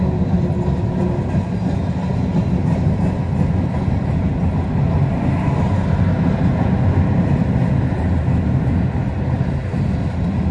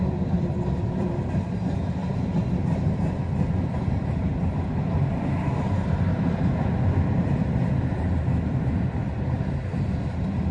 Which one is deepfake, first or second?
second